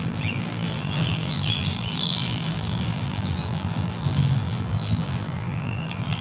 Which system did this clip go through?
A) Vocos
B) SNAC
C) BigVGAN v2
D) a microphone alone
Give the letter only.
C